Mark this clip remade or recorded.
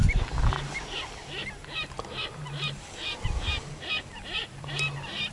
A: recorded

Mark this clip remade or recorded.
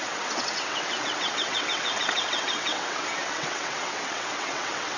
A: remade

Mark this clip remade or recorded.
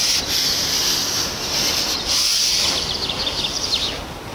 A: recorded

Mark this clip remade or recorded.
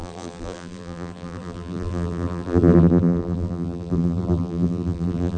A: remade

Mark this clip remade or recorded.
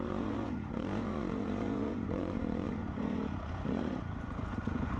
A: remade